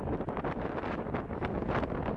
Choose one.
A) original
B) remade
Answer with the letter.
A